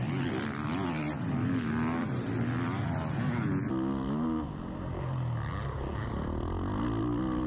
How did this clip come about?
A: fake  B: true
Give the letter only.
B